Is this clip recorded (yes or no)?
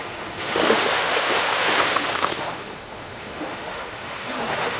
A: no